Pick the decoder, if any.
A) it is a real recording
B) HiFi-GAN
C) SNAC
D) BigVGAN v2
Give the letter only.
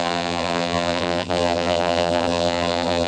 D